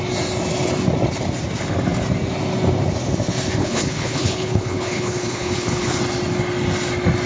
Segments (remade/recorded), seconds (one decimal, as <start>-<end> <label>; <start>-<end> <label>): 0.0-3.6 recorded; 3.6-6.0 remade; 6.0-7.3 recorded

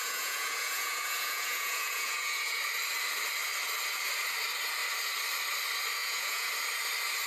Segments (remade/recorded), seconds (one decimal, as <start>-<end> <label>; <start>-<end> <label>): 0.0-2.6 remade; 2.6-6.0 recorded; 6.0-6.5 remade; 6.5-7.3 recorded

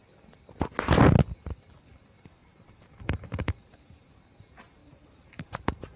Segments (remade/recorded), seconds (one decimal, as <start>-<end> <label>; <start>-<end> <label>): 0.0-2.4 recorded; 2.4-4.1 remade; 4.1-4.8 recorded; 4.8-6.0 remade